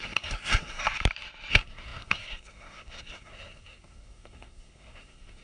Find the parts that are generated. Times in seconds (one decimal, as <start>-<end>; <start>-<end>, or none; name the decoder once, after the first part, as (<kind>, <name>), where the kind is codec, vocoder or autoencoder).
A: 0.0-0.8 (codec, SNAC); 1.5-5.4